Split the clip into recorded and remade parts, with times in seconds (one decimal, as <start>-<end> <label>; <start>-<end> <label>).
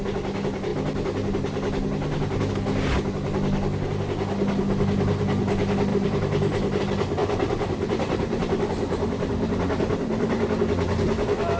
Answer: 0.0-5.9 recorded; 5.9-6.8 remade; 6.8-7.2 recorded; 7.2-10.6 remade; 10.6-11.6 recorded